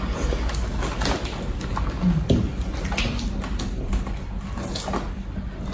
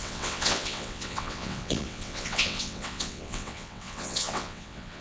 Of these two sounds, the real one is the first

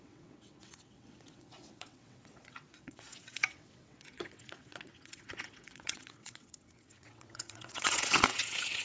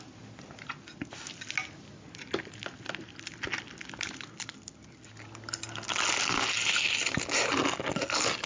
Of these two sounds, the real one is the second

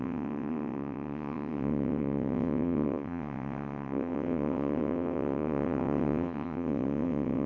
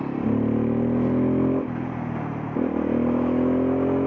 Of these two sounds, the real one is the second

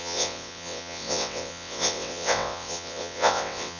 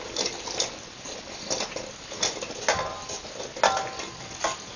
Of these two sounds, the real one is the second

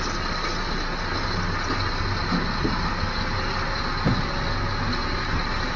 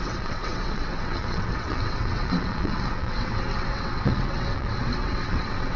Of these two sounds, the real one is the first